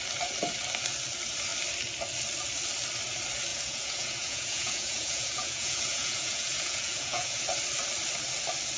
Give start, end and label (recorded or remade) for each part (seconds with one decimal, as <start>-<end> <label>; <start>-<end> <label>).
0.0-3.5 recorded; 3.5-7.4 remade; 7.4-8.8 recorded